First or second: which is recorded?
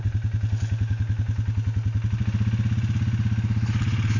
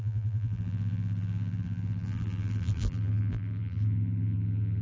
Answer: first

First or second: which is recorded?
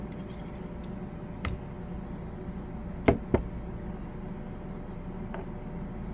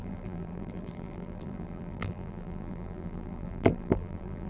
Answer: first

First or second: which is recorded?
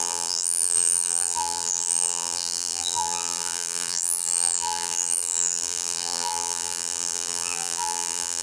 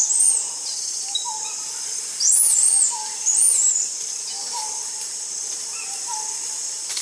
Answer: second